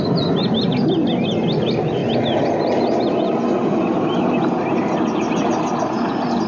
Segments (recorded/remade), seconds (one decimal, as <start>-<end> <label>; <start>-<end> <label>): 0.0-6.5 recorded